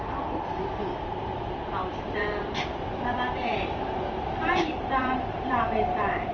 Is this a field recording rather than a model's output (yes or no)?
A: no